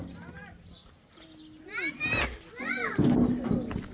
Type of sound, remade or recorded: recorded